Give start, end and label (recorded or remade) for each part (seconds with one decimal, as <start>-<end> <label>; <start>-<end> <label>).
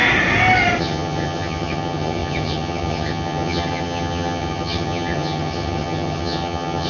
0.0-0.8 recorded; 0.8-6.9 remade